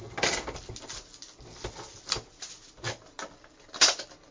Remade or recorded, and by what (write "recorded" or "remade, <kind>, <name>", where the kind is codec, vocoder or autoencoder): recorded